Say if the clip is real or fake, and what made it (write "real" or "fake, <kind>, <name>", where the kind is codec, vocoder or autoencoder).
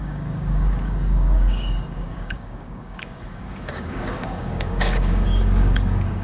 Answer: fake, codec, DAC